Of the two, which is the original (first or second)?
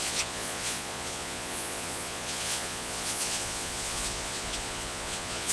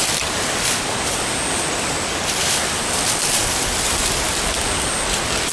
second